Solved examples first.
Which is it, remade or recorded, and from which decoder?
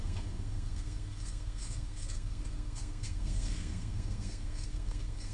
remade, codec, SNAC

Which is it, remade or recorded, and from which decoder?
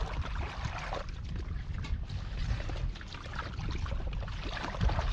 recorded